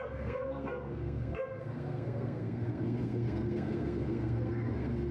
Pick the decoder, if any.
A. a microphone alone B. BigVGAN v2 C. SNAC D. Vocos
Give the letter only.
C